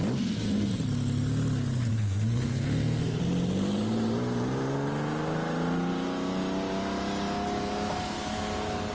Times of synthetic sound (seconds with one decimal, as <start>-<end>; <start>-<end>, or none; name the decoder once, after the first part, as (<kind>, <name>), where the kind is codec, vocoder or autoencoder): 1.9-3.2 (codec, SNAC)